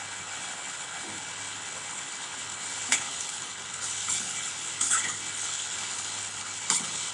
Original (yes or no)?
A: no